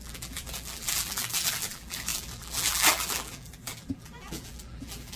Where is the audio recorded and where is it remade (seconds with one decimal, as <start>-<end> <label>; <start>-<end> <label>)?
0.0-5.2 remade